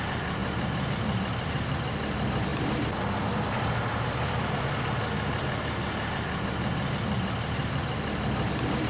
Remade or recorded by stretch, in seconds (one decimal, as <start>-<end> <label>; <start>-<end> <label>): 0.0-0.4 recorded; 0.4-1.5 remade; 1.5-2.5 recorded; 2.5-4.6 remade; 4.6-8.9 recorded